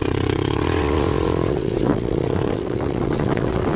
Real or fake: fake